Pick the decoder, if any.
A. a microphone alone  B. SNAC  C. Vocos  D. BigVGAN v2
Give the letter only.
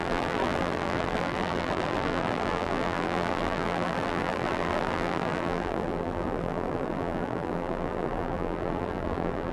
D